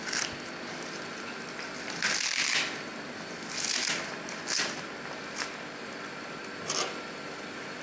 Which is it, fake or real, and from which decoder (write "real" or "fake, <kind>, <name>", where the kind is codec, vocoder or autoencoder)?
real